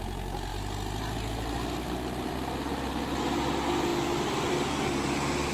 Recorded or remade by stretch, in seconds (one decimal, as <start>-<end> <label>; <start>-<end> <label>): 0.0-5.5 recorded